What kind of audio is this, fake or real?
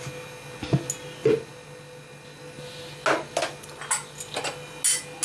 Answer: real